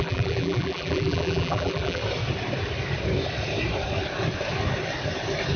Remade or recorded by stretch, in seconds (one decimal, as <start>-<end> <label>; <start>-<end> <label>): 0.0-2.0 remade; 2.0-5.6 recorded